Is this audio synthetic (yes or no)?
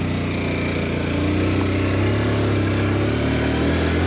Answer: no